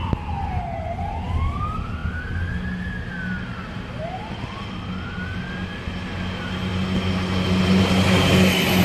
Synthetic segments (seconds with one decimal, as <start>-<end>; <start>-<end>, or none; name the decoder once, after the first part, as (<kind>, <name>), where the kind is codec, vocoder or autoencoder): none